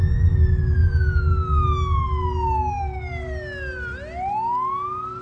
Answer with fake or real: real